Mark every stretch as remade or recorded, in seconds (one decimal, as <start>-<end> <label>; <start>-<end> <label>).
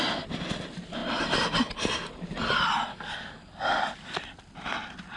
0.0-2.9 recorded; 2.9-3.8 remade; 3.8-5.2 recorded